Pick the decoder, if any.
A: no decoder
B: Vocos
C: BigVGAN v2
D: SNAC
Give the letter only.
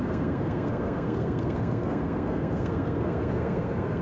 D